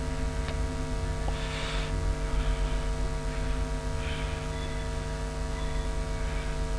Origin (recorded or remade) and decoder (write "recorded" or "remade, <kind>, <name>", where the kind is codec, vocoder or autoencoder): recorded